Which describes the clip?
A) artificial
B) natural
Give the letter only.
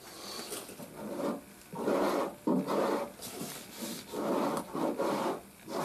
B